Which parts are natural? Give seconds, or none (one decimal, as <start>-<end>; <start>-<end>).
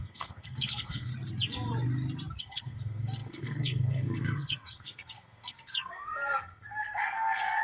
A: 1.1-2.4